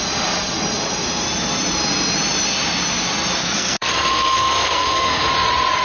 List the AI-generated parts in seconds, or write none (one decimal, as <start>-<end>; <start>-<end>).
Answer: 3.4-5.3